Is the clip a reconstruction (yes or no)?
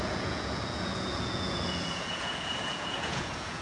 yes